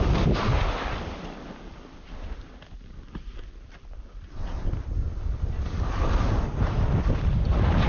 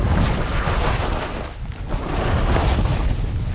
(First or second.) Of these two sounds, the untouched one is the second